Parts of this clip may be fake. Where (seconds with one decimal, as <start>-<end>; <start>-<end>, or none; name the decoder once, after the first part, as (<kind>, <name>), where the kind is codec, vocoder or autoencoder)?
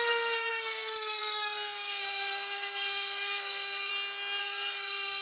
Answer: 0.0-3.9 (codec, SNAC); 4.4-5.2